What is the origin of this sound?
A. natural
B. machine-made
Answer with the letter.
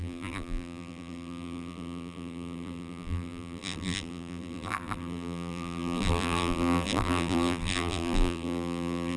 B